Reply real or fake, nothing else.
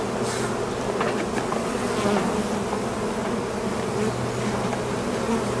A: real